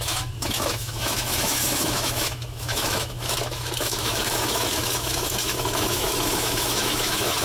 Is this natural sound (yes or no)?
no